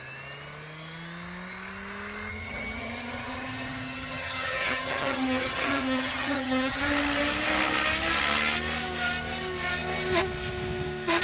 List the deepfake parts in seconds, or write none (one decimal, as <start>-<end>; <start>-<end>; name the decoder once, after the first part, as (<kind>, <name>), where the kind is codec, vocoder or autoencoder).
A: 2.3-6.8 (vocoder, HiFi-GAN)